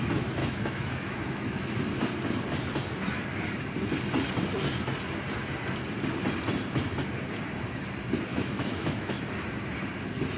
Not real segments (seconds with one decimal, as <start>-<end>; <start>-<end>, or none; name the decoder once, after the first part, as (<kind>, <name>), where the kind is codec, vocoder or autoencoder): 0.4-1.8 (autoencoder, DAC-VAE); 8.3-9.2